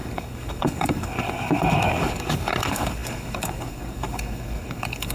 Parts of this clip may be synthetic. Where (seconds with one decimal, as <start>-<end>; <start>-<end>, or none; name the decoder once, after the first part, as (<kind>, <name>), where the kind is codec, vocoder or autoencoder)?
0.0-5.1 (codec, DAC)